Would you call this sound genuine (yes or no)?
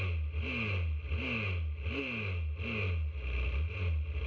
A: yes